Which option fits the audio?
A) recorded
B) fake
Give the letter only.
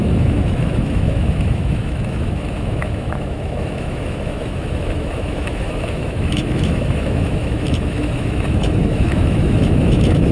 B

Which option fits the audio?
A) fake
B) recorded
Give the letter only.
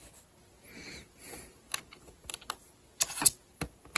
B